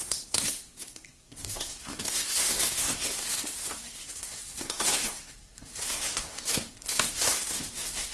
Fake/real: fake